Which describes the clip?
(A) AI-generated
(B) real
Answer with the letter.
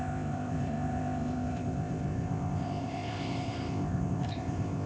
A